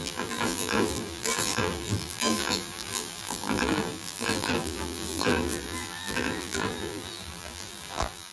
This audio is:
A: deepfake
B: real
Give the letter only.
A